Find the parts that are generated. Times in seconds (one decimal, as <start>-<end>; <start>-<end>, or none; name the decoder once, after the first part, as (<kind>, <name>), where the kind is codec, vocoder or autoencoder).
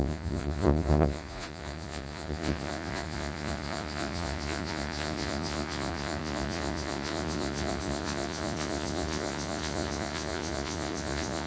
0.0-11.5 (vocoder, Vocos)